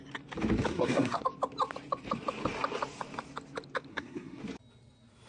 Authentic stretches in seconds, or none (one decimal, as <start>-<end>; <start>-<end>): 0.0-0.7; 1.2-3.9; 4.4-5.3